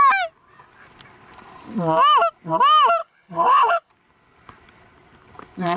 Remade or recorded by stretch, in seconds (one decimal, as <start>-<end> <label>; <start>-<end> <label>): 0.0-3.0 recorded; 3.0-3.9 remade; 3.9-5.8 recorded